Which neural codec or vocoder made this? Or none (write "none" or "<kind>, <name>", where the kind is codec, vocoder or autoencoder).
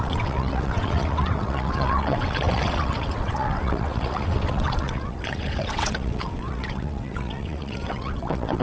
vocoder, WaveNeXt